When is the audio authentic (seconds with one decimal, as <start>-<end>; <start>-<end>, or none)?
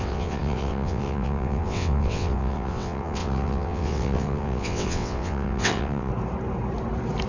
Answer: 6.1-7.3